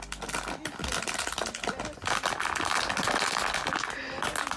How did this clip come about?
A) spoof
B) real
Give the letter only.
B